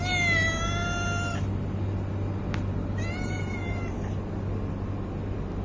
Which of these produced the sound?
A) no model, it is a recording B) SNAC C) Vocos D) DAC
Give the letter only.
A